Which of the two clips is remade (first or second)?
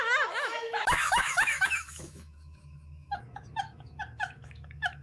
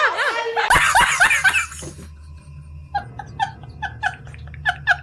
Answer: first